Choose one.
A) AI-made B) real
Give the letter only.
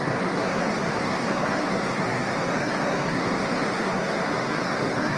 A